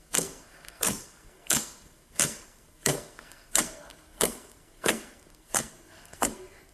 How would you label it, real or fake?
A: fake